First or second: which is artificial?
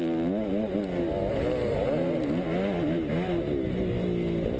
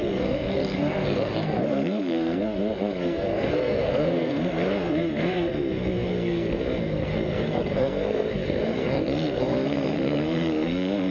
second